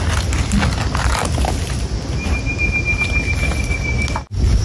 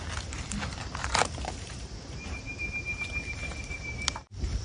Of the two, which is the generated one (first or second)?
second